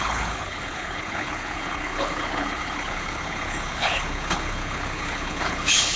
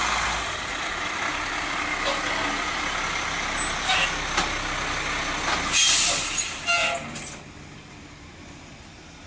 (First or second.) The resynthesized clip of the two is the first